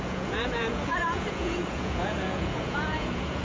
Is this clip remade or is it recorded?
remade